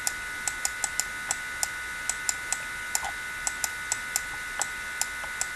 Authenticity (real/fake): real